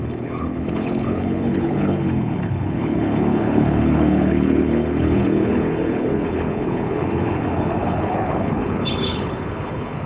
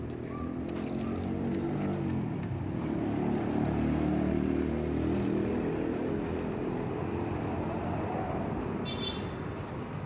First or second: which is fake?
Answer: first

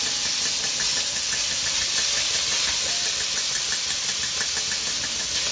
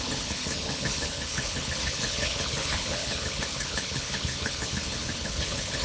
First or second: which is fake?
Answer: second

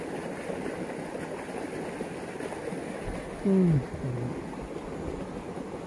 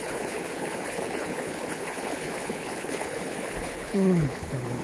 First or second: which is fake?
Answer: second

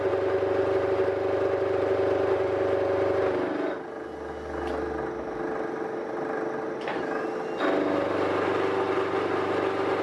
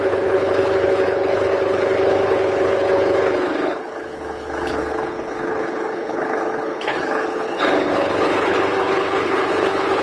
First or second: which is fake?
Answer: second